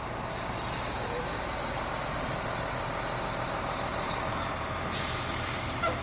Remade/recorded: remade